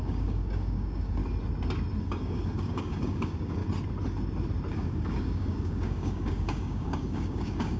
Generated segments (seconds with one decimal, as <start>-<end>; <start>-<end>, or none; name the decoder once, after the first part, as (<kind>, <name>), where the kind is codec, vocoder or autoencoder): 0.0-1.2 (codec, DAC); 2.0-3.6; 4.7-7.8